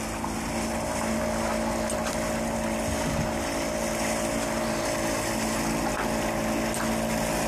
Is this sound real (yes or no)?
yes